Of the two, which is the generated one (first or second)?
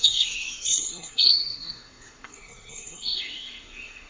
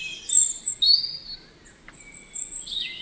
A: first